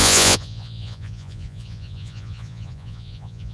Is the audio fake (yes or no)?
yes